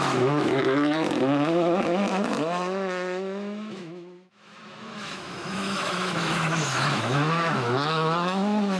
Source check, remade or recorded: remade